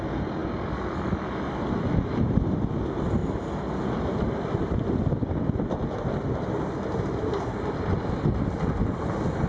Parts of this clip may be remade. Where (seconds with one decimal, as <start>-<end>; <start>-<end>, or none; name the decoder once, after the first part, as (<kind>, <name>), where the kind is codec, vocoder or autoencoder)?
none